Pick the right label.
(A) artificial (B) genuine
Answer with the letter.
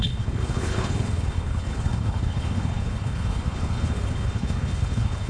A